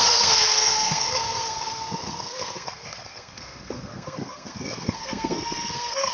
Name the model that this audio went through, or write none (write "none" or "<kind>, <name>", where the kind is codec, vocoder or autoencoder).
codec, SNAC